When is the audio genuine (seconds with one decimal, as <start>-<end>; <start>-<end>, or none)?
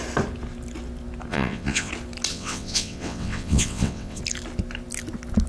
0.0-1.3; 1.9-2.3; 4.2-5.5